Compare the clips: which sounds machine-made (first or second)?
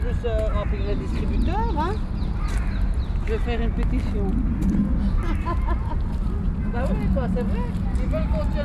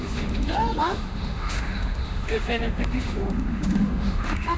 second